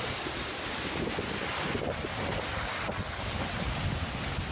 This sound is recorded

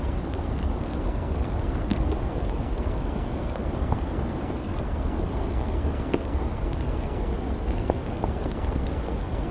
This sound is remade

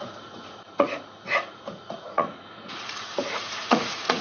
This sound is remade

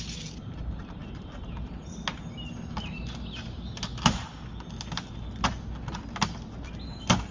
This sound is recorded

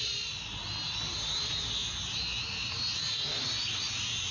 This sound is recorded